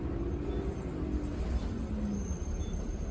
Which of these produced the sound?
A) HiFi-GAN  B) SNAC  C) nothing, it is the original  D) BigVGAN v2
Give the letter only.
C